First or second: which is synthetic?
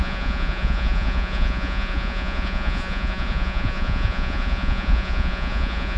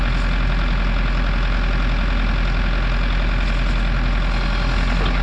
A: first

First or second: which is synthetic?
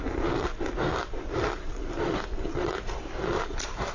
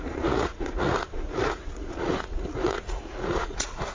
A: second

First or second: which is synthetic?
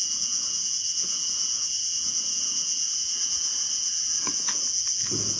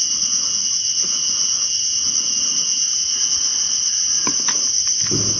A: first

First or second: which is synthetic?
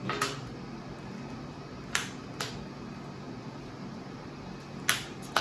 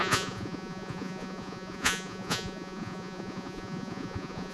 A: second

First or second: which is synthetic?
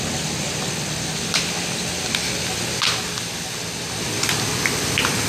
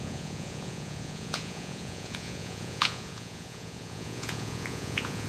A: second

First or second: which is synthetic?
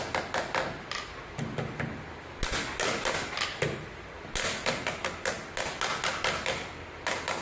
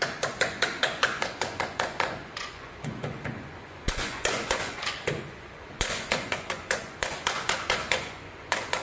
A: second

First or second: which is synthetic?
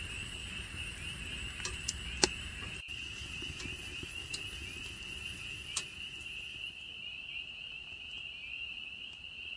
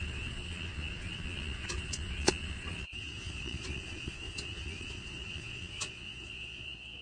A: second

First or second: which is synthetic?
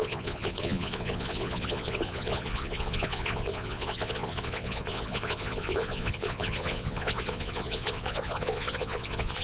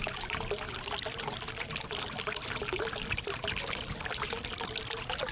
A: first